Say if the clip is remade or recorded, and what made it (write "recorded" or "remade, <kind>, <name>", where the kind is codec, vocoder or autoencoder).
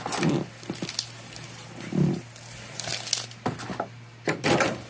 recorded